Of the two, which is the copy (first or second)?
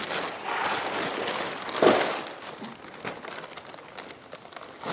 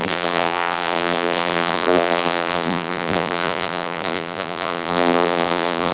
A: second